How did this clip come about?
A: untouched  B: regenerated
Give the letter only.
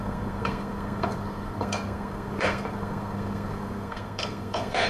B